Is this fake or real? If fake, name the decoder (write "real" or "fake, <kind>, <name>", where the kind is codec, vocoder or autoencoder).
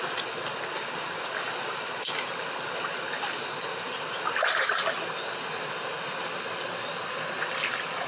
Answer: real